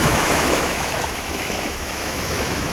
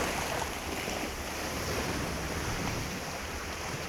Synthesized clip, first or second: first